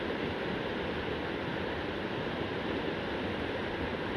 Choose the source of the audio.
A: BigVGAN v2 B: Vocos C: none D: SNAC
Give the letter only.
C